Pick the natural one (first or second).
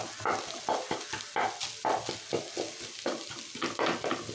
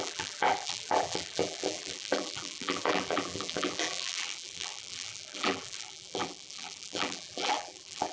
first